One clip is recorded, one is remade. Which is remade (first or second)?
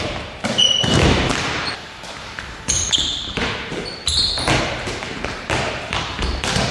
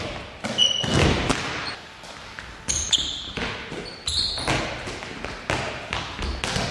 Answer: first